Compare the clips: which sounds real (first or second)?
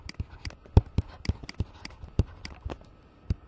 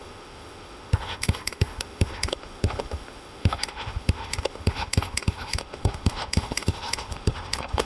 first